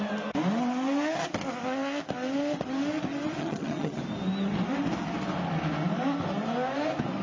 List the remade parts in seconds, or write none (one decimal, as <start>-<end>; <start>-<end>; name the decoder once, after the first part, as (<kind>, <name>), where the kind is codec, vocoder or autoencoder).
3.4-4.0 (vocoder, HiFi-GAN)